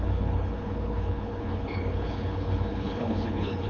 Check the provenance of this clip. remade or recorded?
remade